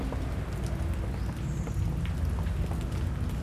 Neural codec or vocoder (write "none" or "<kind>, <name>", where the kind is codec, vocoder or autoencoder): none